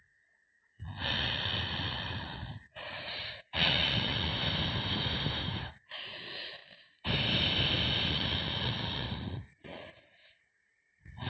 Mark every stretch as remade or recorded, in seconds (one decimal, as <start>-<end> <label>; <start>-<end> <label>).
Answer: 0.0-4.3 remade; 4.3-5.7 recorded; 5.7-6.6 remade; 6.6-8.1 recorded; 8.1-11.3 remade